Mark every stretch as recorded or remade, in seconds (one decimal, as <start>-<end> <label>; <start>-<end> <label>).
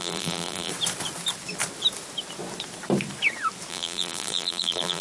0.0-0.7 remade; 0.7-3.7 recorded; 3.7-5.0 remade